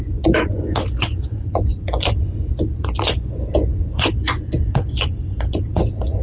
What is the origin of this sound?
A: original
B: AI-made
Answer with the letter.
B